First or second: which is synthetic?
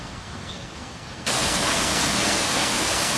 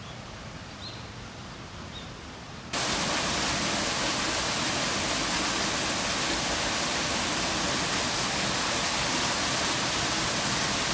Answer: first